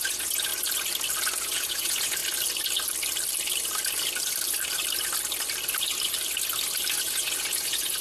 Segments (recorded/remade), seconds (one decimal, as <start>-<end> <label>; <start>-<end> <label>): 0.0-0.5 remade; 0.5-1.4 recorded; 1.4-2.2 remade; 2.2-7.0 recorded; 7.0-8.0 remade